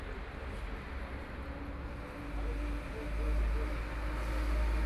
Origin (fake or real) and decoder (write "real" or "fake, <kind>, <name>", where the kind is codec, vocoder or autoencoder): real